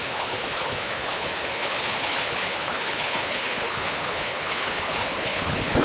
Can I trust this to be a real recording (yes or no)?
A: no